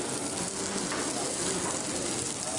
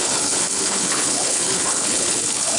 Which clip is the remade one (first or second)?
second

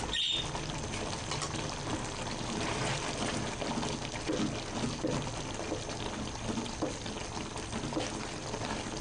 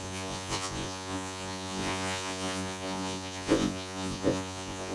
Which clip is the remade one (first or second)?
second